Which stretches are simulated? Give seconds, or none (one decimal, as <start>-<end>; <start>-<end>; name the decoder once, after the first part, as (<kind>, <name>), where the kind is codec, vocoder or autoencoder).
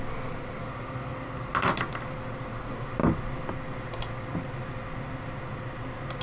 none